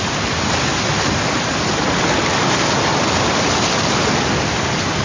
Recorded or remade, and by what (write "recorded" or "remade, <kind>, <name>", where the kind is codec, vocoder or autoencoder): recorded